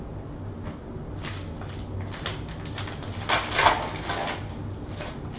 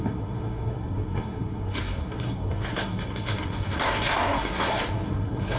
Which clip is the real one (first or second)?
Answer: first